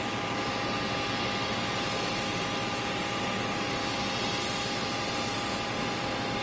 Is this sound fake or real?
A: real